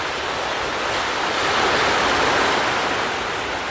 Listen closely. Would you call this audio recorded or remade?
recorded